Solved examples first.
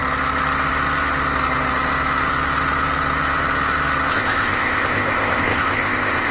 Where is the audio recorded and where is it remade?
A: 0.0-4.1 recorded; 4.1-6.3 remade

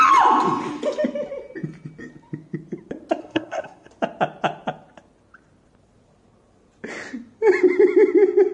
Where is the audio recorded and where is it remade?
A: 0.0-3.2 recorded; 3.2-3.9 remade; 3.9-8.5 recorded

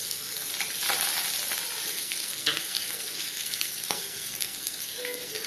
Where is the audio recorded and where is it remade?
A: 0.0-0.5 remade; 0.5-1.9 recorded; 1.9-5.5 remade

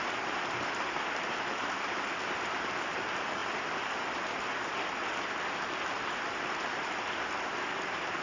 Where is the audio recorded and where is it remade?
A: 0.0-8.2 recorded

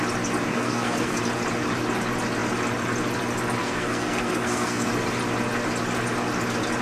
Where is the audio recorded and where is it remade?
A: 0.0-0.5 recorded; 0.5-1.2 remade; 1.2-3.6 recorded; 3.6-4.9 remade; 4.9-6.8 recorded

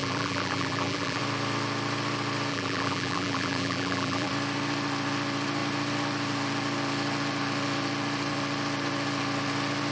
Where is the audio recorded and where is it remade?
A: 0.0-1.2 remade; 1.2-2.5 recorded; 2.5-4.3 remade; 4.3-9.9 recorded

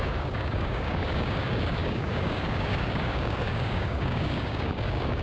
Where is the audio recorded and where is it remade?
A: 0.0-5.2 remade

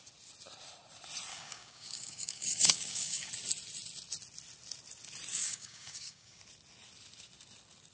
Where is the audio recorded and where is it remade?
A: 0.0-1.3 recorded; 1.3-3.3 remade; 3.3-5.3 recorded; 5.3-6.4 remade; 6.4-7.9 recorded